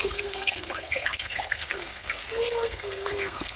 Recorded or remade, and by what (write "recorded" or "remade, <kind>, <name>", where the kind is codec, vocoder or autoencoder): remade, codec, SNAC